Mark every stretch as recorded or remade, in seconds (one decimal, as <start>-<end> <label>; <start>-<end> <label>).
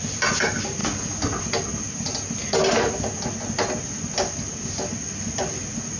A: 0.0-6.0 recorded